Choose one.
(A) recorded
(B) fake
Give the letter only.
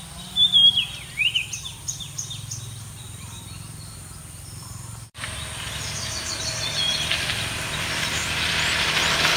B